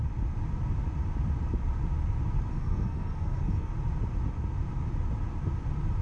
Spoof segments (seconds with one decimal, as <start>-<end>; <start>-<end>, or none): 2.5-3.7